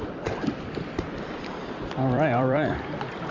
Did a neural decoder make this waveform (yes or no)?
yes